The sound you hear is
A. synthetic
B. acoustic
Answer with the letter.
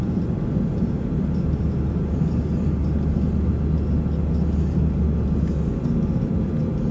B